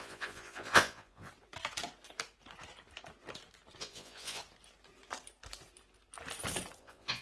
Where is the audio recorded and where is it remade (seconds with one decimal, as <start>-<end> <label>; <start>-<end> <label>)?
0.0-1.3 remade; 1.3-3.8 recorded; 3.8-4.4 remade; 4.4-6.8 recorded; 6.8-7.2 remade